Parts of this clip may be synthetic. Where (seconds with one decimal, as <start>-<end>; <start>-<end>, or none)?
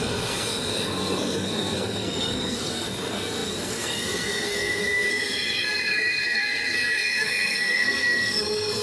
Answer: 0.0-8.8